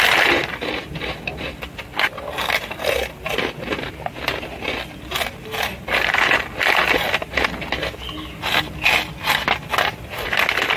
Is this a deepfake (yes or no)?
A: no